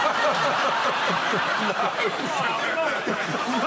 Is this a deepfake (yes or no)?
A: yes